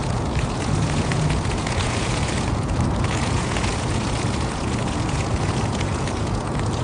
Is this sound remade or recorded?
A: remade